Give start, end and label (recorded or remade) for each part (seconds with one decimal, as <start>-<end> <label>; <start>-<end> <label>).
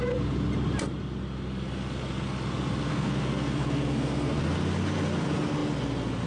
0.0-2.9 recorded; 2.9-4.4 remade; 4.4-6.3 recorded